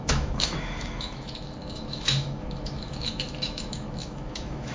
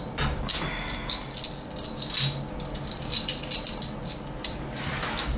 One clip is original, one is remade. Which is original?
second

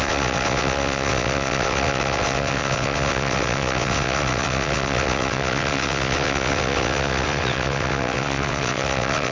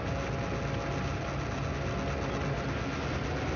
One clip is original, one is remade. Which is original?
second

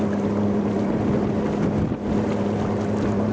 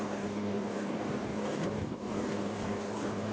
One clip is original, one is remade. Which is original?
first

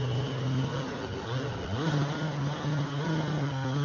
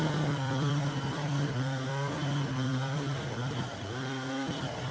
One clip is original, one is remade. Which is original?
first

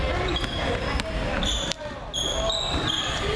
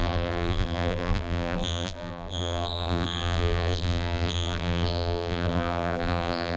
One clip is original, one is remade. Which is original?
first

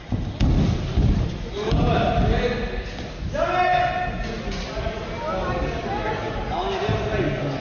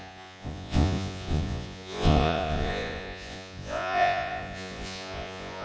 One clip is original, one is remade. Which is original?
first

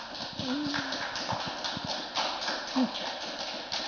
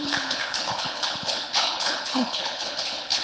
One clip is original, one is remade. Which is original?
first